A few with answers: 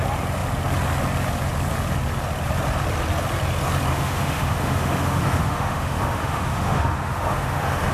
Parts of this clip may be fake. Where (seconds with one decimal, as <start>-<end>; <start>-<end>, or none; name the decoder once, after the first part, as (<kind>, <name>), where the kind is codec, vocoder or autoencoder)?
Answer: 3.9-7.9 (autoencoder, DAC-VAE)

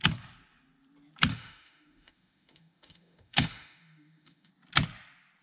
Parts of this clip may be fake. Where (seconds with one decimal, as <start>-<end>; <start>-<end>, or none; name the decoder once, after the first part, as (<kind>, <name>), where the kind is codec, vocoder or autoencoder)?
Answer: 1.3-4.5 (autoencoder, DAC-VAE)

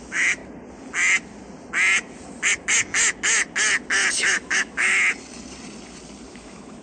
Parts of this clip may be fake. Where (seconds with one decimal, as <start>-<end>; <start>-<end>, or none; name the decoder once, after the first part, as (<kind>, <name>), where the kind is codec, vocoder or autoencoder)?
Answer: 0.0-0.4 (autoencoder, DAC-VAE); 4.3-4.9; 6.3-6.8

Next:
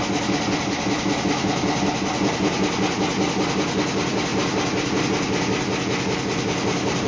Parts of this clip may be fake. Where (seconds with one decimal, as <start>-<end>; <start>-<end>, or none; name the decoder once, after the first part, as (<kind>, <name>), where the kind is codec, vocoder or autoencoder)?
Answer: none